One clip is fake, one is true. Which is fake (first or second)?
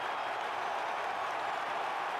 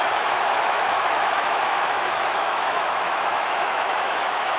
second